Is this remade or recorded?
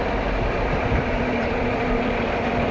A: remade